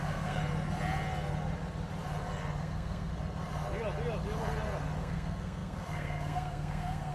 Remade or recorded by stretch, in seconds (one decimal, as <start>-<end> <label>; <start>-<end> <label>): 0.0-0.4 remade; 0.4-2.6 recorded; 2.6-3.1 remade; 3.1-5.0 recorded; 5.0-7.1 remade